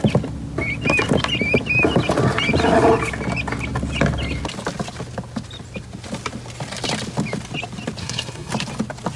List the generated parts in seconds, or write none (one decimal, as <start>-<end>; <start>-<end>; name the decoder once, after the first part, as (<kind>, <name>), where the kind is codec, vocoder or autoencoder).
8.0-8.5 (codec, SNAC)